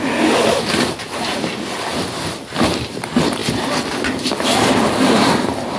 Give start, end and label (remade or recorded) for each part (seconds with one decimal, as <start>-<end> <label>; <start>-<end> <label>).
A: 0.0-5.8 recorded